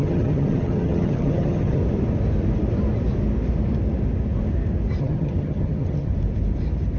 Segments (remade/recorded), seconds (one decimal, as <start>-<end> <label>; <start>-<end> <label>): 0.0-1.8 remade; 1.8-5.0 recorded; 5.0-6.1 remade; 6.1-7.0 recorded